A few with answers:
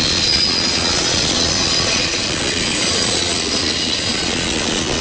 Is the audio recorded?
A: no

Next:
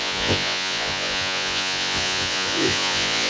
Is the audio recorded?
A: no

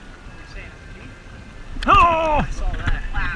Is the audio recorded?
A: yes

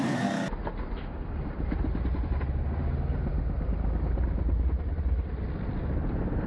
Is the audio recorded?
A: yes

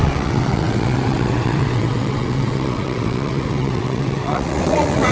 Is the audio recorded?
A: no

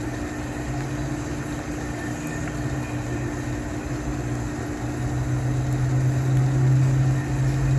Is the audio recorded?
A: yes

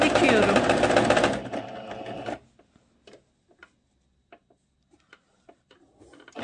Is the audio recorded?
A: yes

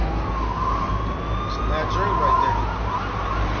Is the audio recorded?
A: yes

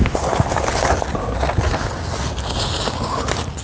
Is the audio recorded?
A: yes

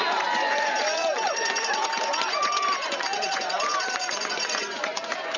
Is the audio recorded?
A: no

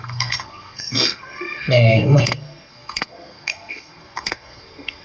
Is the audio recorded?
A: no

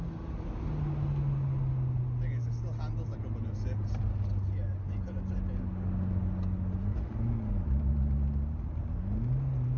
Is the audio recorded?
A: yes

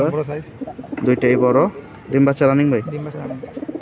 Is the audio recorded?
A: yes